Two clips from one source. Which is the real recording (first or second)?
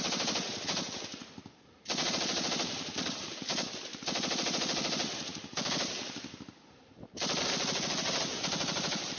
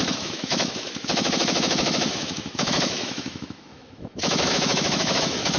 first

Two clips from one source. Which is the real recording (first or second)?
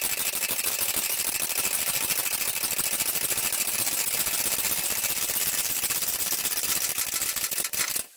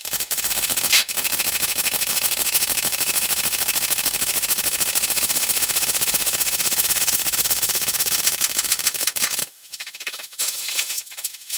first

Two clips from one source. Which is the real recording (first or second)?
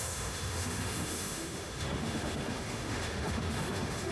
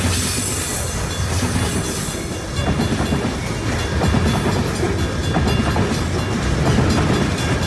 second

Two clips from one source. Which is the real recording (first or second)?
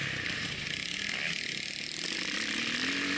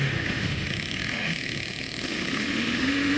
first